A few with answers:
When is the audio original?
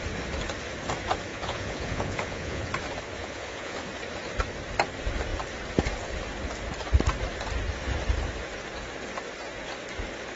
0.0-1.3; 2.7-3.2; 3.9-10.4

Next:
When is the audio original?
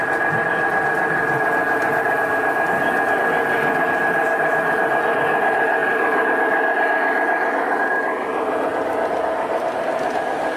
0.0-10.6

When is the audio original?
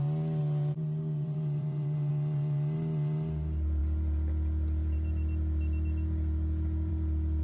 0.0-0.4; 2.1-7.4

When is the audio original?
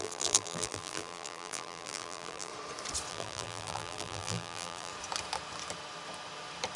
2.5-3.1; 4.9-6.8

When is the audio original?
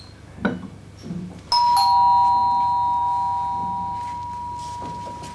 0.0-5.3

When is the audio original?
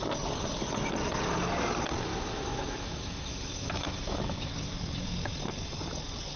0.0-2.1; 4.5-6.4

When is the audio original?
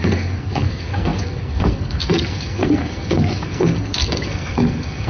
none